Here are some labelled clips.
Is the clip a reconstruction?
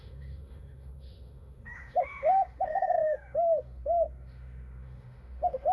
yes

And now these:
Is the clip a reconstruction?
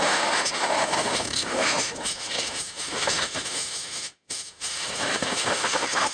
yes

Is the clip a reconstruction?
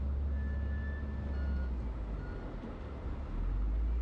no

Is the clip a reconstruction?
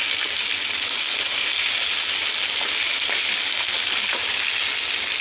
no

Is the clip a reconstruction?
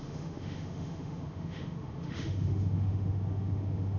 yes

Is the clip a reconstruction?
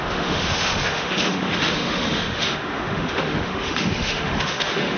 yes